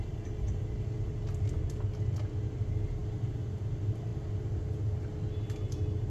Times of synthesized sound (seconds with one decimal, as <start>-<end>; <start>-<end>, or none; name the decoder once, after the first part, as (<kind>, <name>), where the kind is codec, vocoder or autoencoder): none